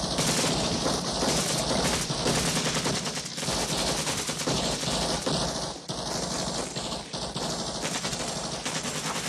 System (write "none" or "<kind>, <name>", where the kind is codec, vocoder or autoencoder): none